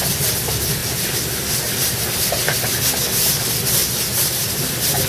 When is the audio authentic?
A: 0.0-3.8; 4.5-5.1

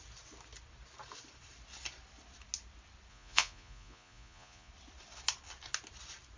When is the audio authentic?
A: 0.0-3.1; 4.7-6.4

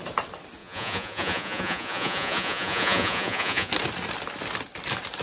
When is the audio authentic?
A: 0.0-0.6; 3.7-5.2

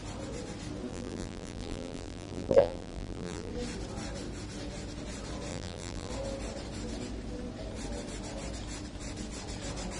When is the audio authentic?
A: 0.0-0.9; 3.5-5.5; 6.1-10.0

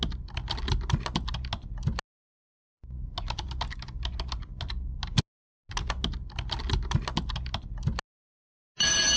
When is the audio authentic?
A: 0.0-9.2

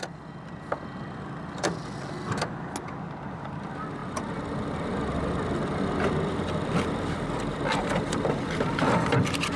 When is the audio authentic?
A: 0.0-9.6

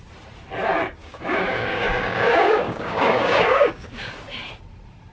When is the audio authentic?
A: 0.0-1.0; 4.1-5.1

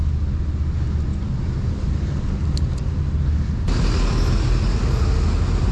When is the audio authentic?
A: 0.0-5.7